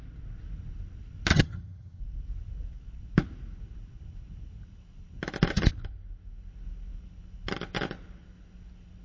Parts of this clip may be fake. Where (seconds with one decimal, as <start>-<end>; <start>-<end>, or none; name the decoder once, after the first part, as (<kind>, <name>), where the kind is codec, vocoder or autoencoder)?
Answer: 1.3-2.0 (vocoder, HiFi-GAN)